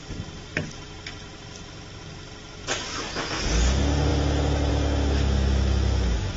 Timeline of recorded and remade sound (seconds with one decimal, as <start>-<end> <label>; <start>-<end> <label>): 0.0-2.6 recorded; 2.6-3.3 remade; 3.3-6.4 recorded